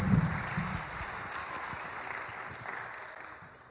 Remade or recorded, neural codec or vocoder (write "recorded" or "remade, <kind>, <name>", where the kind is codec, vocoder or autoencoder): recorded